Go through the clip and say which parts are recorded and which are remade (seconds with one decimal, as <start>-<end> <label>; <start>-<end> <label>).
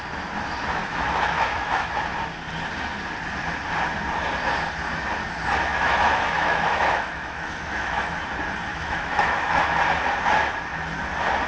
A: 0.0-0.8 recorded; 0.8-1.9 remade; 1.9-5.7 recorded; 5.7-8.1 remade; 8.1-8.7 recorded; 8.7-9.8 remade; 9.8-11.5 recorded